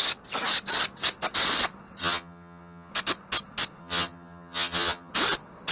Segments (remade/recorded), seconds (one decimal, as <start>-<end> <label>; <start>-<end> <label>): 0.0-2.0 recorded; 2.0-2.9 remade; 2.9-3.8 recorded; 3.8-5.1 remade; 5.1-5.7 recorded